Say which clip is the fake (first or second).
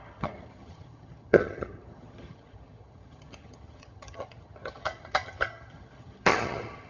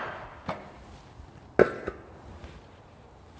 first